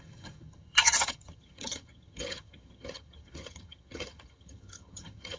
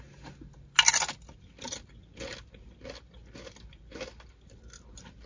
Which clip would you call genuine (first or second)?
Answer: second